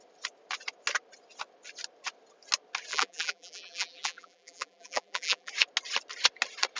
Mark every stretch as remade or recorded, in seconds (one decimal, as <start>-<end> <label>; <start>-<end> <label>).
0.0-2.9 recorded; 2.9-5.5 remade; 5.5-6.8 recorded